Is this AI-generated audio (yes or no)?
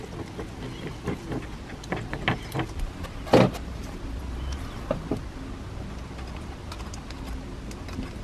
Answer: no